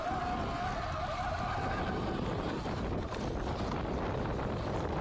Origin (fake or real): real